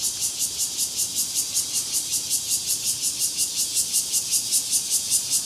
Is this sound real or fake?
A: fake